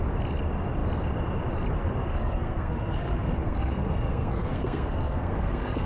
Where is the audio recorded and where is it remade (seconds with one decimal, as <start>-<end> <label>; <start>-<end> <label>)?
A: 0.0-2.1 recorded; 2.1-5.9 remade